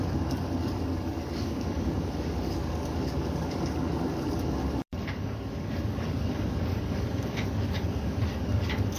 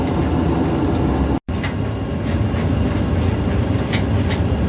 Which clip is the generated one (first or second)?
first